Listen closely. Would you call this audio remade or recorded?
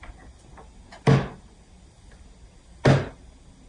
recorded